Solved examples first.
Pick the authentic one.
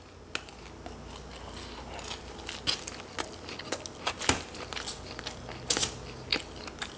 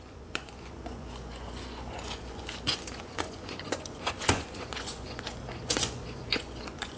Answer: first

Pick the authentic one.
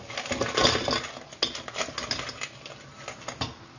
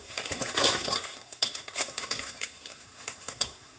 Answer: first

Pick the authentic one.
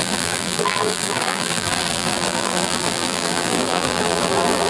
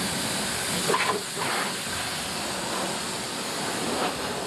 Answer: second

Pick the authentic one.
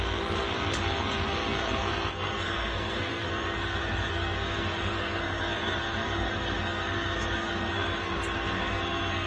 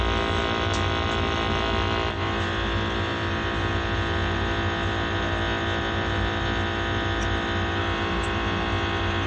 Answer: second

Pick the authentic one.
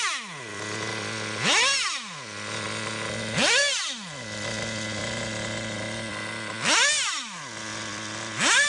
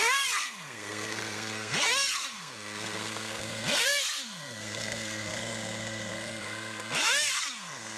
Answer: first